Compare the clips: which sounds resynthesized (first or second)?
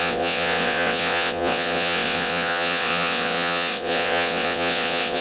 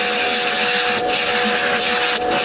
first